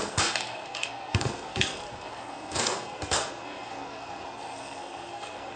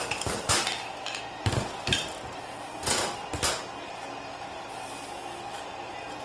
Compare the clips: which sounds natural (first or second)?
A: second